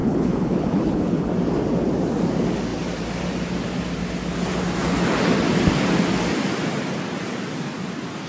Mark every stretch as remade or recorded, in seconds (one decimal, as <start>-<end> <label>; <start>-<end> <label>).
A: 0.0-1.3 remade; 1.3-8.3 recorded